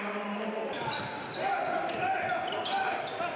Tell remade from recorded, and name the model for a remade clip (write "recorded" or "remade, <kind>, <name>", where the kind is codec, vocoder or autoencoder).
recorded